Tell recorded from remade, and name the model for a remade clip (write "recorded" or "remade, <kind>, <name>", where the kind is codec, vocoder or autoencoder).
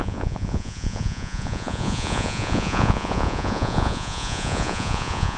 remade, vocoder, Vocos